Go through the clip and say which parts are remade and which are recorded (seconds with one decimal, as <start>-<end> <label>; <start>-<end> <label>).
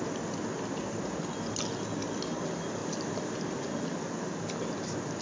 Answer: 0.0-5.2 recorded